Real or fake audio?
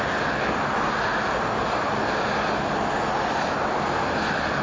real